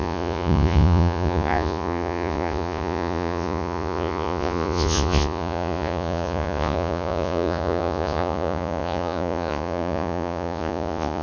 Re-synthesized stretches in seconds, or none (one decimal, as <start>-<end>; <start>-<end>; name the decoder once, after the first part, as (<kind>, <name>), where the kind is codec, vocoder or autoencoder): 0.0-11.2 (vocoder, Vocos)